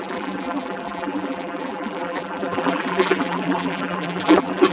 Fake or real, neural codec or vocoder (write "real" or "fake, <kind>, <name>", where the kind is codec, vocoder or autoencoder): fake, vocoder, BigVGAN v2